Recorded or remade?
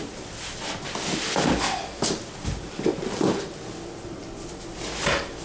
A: recorded